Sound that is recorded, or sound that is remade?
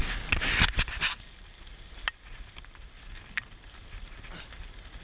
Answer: recorded